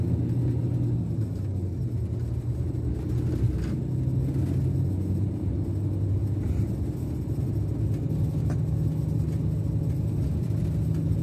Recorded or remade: recorded